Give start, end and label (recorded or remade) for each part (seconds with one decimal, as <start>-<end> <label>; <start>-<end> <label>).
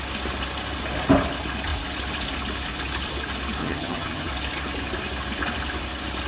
0.0-3.6 recorded; 3.6-4.3 remade; 4.3-6.3 recorded